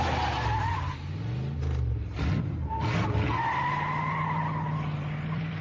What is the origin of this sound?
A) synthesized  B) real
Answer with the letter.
B